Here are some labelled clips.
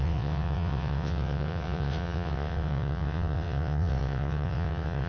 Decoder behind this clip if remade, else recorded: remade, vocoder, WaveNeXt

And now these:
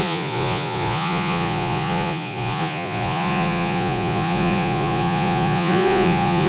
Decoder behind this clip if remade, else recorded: remade, vocoder, Vocos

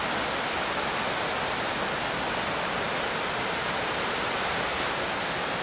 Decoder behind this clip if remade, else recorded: recorded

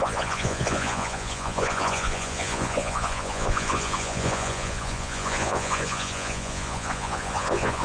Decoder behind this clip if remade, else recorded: remade, vocoder, Vocos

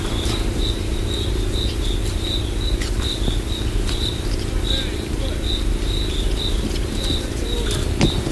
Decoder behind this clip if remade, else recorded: recorded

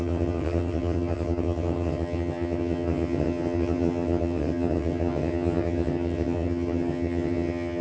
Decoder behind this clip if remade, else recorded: remade, vocoder, HiFi-GAN